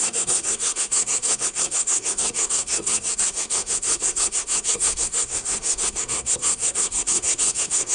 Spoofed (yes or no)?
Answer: yes